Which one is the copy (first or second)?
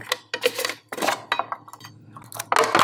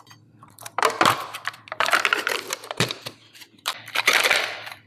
second